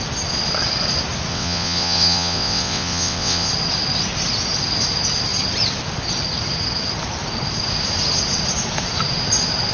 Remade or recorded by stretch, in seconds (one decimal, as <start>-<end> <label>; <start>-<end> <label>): 0.0-1.3 recorded; 1.3-3.5 remade; 3.5-9.7 recorded

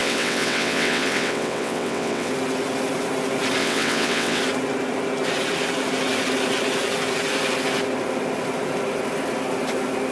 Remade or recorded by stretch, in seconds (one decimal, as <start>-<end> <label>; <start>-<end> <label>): 0.0-2.3 remade; 2.3-3.6 recorded; 3.6-4.4 remade; 4.4-10.1 recorded

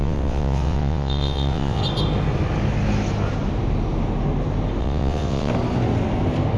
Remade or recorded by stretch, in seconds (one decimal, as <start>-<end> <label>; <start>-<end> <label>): 0.0-1.8 remade; 1.8-4.8 recorded; 4.8-5.5 remade; 5.5-6.6 recorded

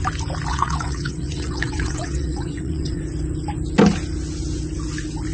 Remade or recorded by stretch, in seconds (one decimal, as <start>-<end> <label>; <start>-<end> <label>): 0.0-0.5 recorded; 0.5-3.0 remade; 3.0-5.3 recorded

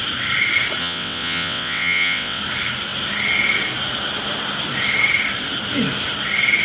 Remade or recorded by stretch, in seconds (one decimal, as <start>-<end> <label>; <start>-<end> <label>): 0.0-0.8 recorded; 0.8-2.4 remade; 2.4-6.6 recorded

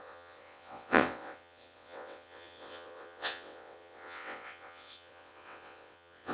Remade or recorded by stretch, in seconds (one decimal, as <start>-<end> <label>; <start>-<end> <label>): 0.0-6.3 remade

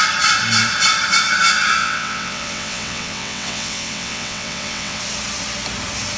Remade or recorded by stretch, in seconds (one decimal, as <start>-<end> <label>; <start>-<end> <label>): 0.0-1.8 recorded; 1.8-5.0 remade; 5.0-6.2 recorded